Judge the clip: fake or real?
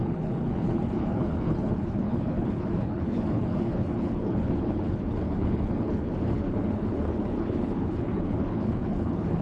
fake